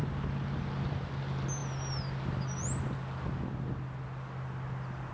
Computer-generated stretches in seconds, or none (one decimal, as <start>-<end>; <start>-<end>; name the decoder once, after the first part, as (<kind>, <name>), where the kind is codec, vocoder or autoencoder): none